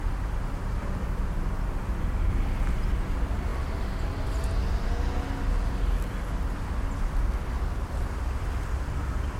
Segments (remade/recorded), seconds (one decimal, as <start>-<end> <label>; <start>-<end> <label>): 0.0-9.4 recorded